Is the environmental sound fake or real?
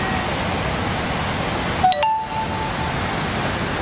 real